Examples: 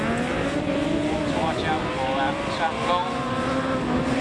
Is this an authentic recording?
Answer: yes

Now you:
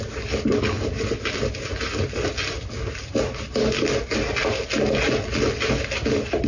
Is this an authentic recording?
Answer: yes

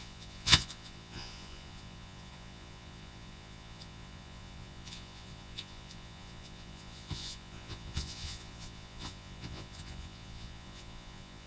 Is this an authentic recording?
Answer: no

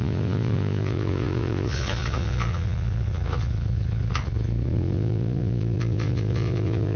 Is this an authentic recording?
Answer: no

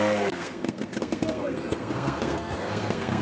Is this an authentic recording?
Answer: no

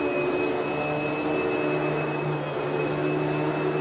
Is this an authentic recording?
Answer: yes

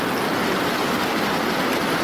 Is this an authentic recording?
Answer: yes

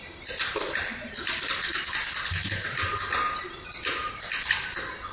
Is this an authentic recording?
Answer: yes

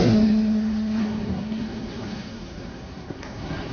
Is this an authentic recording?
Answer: no